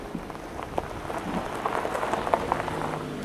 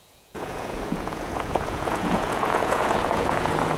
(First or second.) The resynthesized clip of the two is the second